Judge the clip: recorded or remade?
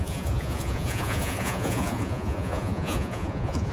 remade